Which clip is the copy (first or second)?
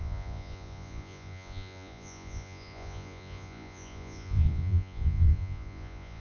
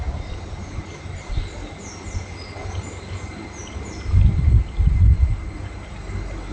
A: first